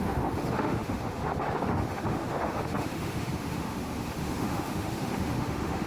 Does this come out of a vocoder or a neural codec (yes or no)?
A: yes